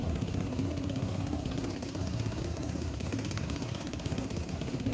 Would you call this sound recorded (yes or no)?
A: no